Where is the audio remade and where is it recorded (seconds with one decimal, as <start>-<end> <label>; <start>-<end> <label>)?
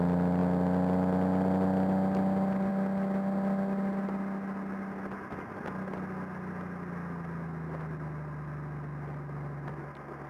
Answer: 0.0-10.3 recorded